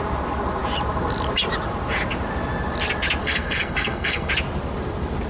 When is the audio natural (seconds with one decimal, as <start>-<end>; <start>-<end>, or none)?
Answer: 0.0-3.2; 4.3-5.3